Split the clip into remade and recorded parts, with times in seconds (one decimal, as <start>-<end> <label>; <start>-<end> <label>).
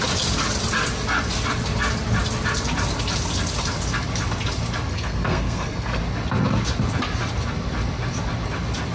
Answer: 0.0-4.9 recorded; 4.9-6.0 remade; 6.0-8.9 recorded